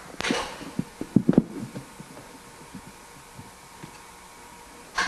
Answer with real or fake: real